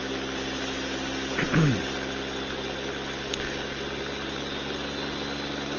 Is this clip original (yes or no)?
yes